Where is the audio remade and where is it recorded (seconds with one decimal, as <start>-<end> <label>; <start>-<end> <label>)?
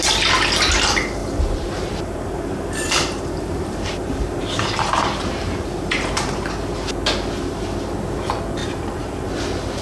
0.0-1.2 recorded; 1.2-6.5 remade; 6.5-8.6 recorded; 8.6-9.3 remade; 9.3-9.8 recorded